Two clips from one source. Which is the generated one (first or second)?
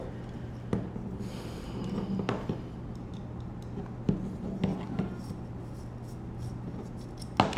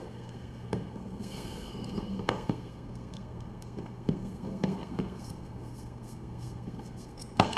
second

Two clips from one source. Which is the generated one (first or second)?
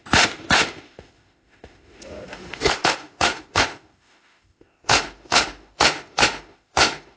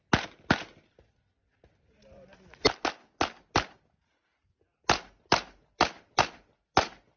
first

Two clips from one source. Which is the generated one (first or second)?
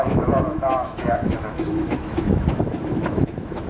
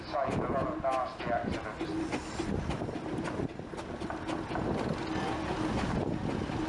first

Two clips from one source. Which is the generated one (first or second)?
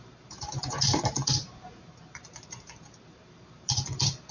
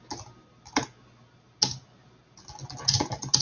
first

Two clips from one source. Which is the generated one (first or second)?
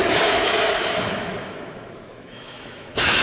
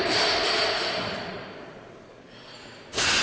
first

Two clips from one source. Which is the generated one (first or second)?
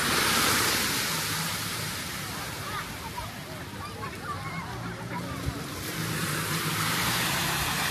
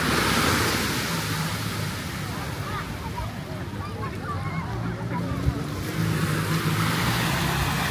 first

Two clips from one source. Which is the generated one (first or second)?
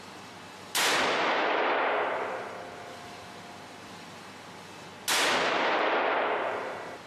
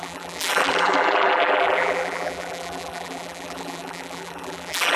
second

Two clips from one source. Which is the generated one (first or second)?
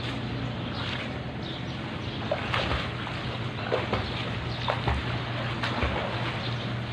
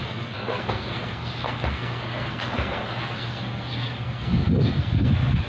second